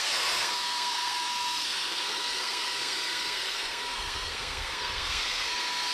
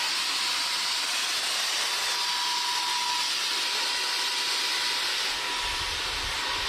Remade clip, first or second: first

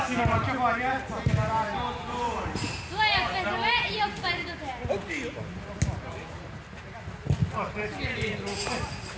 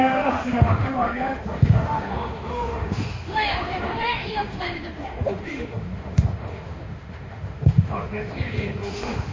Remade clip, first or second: second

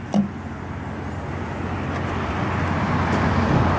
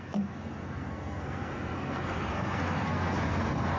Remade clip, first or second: second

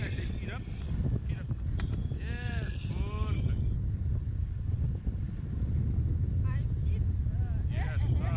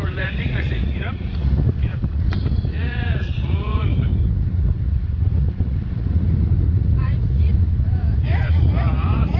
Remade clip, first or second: second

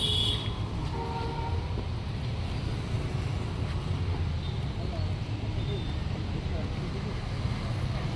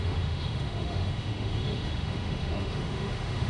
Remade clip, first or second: second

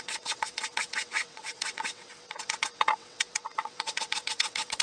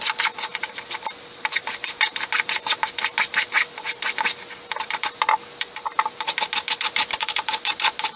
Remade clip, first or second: first